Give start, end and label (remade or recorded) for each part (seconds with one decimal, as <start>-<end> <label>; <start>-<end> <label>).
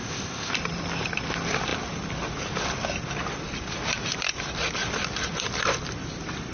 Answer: 0.0-0.5 remade; 0.5-6.5 recorded